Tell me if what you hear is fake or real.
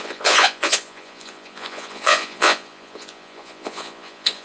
fake